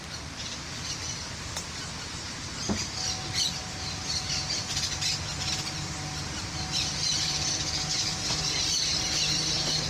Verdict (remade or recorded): recorded